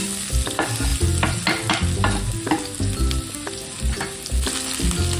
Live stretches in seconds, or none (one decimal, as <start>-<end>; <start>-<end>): 0.0-5.2